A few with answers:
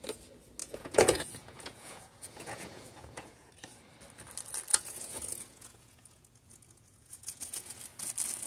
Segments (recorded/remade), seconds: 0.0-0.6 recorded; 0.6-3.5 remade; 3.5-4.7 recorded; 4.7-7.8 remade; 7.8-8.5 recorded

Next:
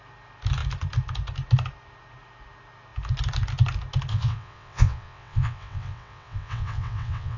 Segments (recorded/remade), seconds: 0.0-4.1 recorded; 4.1-7.4 remade